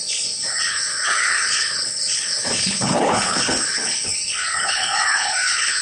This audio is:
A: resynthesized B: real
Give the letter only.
A